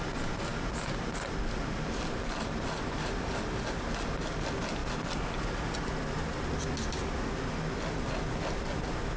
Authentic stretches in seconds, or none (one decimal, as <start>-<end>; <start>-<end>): 0.0-9.2